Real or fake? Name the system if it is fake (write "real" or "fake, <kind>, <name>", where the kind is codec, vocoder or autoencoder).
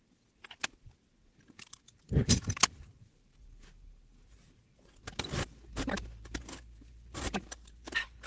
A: real